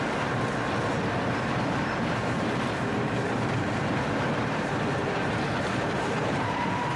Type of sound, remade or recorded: remade